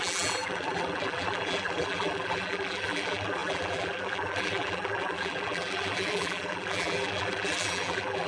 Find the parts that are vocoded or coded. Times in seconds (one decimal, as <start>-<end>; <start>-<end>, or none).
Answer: 0.0-8.3